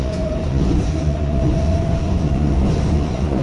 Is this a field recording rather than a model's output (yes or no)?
no